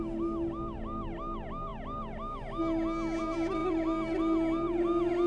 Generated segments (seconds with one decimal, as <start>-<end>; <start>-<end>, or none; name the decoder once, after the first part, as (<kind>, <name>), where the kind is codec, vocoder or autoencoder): none